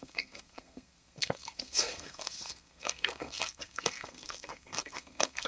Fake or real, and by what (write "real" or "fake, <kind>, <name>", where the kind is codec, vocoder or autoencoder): fake, codec, SNAC